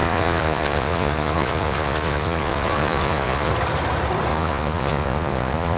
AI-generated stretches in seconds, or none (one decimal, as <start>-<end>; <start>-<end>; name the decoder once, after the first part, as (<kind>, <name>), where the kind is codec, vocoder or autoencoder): 0.0-3.5 (vocoder, Vocos); 4.3-5.8